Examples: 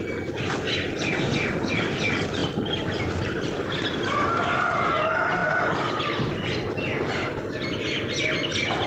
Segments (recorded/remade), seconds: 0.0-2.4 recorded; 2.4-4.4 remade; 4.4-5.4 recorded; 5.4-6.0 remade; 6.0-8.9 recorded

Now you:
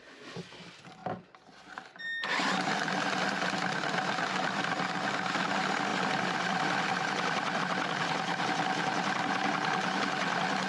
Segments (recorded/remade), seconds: 0.0-10.7 recorded

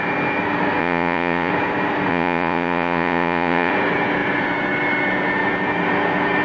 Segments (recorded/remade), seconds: 0.0-0.8 recorded; 0.8-1.5 remade; 1.5-2.1 recorded; 2.1-3.7 remade; 3.7-6.4 recorded

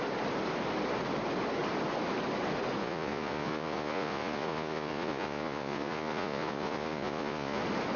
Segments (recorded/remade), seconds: 0.0-2.8 recorded; 2.8-7.6 remade; 7.6-8.0 recorded